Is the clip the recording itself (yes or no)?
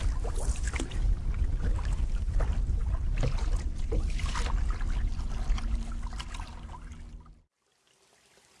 yes